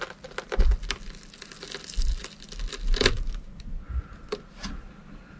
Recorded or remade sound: recorded